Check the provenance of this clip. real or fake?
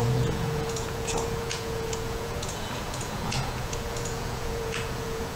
fake